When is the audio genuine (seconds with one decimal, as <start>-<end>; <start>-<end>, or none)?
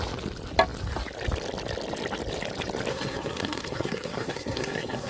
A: 0.0-2.9